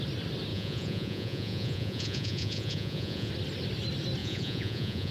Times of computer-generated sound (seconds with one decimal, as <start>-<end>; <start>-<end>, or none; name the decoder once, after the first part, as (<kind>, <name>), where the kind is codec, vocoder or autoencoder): 0.5-3.3 (vocoder, Vocos); 4.2-5.1